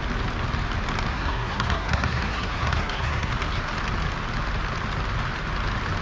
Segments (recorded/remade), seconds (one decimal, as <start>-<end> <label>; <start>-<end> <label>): 0.0-1.1 recorded; 1.1-3.3 remade; 3.3-6.0 recorded